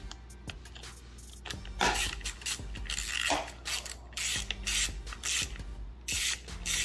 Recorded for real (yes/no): yes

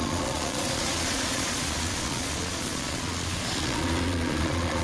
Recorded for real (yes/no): no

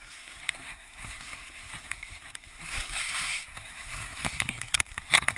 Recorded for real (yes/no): no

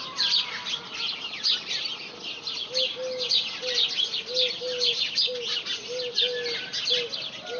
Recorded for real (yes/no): yes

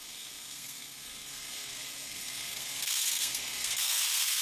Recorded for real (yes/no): no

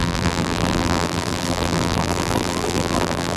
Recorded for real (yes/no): no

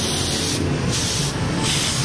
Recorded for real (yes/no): yes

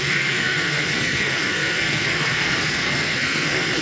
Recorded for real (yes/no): no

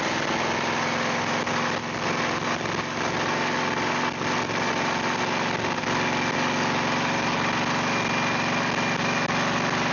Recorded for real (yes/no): yes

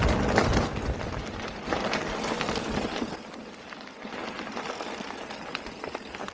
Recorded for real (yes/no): yes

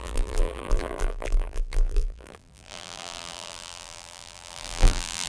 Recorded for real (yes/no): no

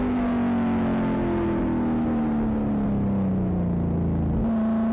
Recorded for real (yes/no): yes